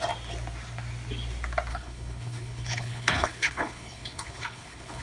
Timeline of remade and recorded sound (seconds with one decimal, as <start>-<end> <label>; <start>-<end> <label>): 0.0-1.7 recorded; 1.7-5.0 remade